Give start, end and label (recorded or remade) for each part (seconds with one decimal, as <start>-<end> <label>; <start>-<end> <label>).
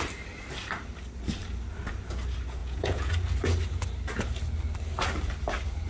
0.0-2.6 recorded; 2.6-3.1 remade; 3.1-5.9 recorded